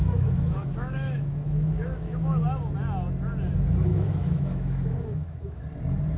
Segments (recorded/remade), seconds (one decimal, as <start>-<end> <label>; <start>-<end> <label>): 0.0-2.4 remade; 2.4-3.9 recorded; 3.9-5.6 remade; 5.6-6.2 recorded